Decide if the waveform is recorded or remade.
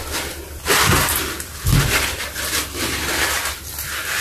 recorded